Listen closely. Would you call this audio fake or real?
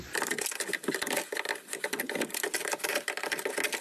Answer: real